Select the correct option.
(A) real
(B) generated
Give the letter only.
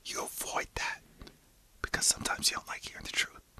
A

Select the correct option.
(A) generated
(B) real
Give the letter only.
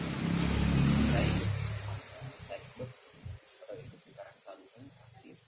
B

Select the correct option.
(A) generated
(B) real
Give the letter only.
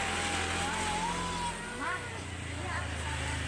B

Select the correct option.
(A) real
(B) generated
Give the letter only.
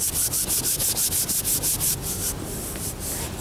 A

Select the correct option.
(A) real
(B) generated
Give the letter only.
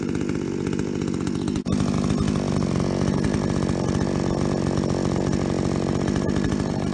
A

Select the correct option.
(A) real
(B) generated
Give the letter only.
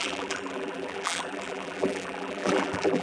B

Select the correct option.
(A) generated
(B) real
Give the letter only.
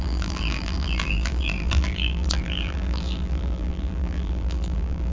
A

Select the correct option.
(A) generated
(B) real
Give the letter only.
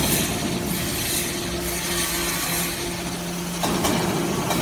B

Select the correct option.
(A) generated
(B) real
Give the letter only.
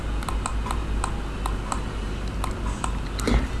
B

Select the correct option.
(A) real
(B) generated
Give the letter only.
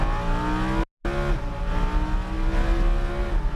A